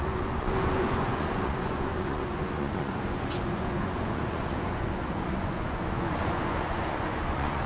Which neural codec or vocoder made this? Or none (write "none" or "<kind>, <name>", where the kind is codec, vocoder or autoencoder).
vocoder, Vocos